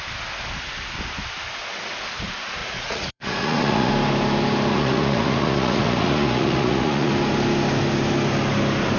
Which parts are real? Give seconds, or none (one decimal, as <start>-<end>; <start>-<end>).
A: 0.0-2.6; 3.9-4.7; 7.1-9.0